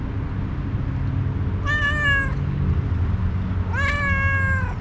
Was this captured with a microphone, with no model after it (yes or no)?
yes